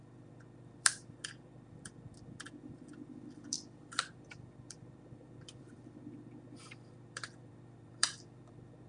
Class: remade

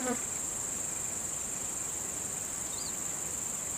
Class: recorded